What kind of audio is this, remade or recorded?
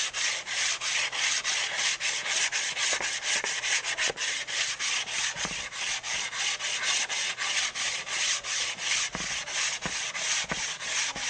recorded